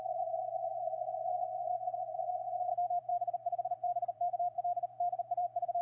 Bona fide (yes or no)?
no